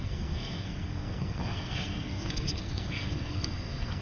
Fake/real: fake